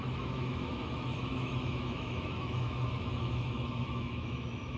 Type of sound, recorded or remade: remade